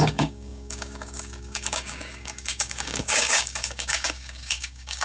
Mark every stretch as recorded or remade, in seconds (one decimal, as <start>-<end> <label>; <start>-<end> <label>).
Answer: 0.0-5.0 remade